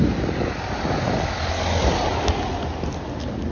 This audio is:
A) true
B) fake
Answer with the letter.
A